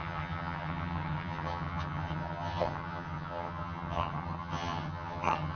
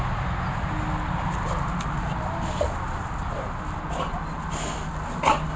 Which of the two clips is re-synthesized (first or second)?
first